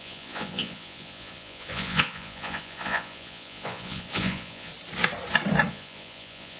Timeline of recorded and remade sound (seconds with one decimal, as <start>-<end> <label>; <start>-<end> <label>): 0.0-4.7 remade; 4.7-5.7 recorded; 5.7-6.6 remade